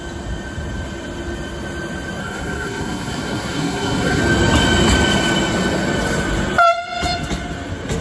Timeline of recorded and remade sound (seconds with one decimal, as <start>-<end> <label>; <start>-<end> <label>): 0.0-2.2 recorded; 2.2-4.2 remade; 4.2-8.0 recorded